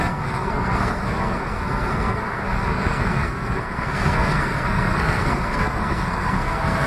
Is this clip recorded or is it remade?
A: remade